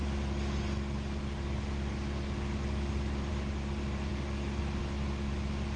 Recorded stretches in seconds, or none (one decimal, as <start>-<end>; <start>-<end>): 0.0-5.8